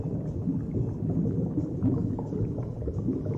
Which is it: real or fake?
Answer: real